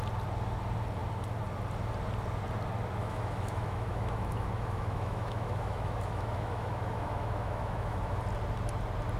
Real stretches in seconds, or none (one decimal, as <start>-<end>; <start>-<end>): 0.0-3.0; 8.2-9.2